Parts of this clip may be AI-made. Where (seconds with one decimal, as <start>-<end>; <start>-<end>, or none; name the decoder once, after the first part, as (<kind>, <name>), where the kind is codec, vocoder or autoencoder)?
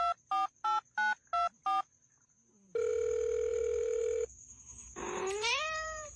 3.5-6.2 (vocoder, BigVGAN v2)